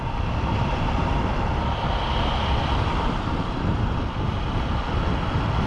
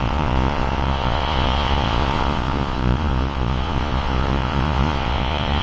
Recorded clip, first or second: first